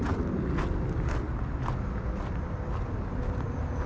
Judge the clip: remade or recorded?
recorded